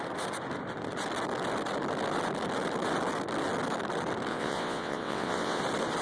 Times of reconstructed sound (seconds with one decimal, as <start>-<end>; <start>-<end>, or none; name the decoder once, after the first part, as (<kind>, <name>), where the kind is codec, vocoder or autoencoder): 4.3-5.6 (vocoder, WaveNeXt)